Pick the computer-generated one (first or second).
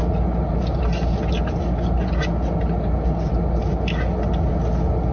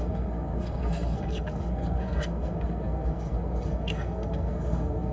second